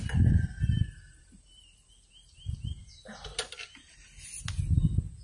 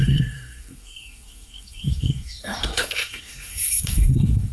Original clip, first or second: first